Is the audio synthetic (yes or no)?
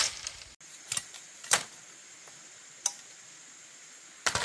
no